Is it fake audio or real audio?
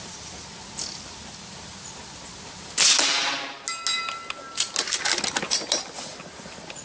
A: real